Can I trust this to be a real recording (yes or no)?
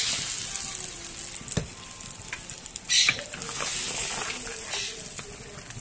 yes